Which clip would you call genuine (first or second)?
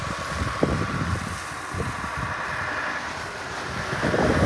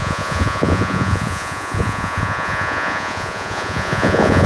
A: first